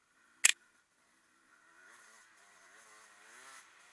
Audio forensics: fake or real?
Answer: real